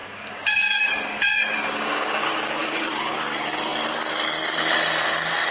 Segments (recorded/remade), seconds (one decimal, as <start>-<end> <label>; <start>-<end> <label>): 0.0-2.2 remade; 2.2-2.6 recorded; 2.6-3.1 remade; 3.1-5.5 recorded